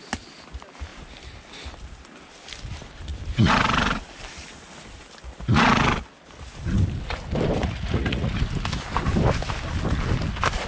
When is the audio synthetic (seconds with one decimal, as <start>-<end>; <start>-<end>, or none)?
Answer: 7.6-8.3